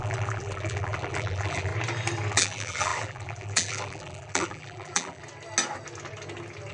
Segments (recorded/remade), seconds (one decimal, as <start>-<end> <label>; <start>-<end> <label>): 0.0-1.7 remade; 1.7-2.3 recorded; 2.3-5.2 remade; 5.2-6.7 recorded